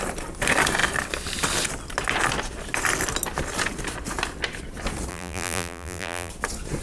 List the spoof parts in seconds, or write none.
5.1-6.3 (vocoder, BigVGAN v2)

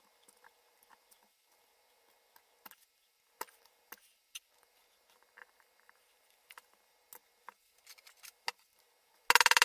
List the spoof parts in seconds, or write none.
none

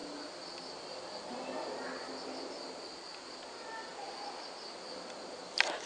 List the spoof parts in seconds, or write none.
none

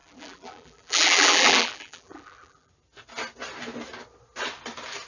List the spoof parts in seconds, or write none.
0.0-2.7 (vocoder, BigVGAN v2)